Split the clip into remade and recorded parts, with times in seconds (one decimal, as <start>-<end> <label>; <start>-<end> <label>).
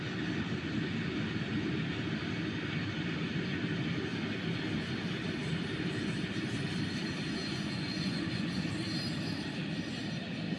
0.0-7.4 recorded; 7.4-8.7 remade; 8.7-10.6 recorded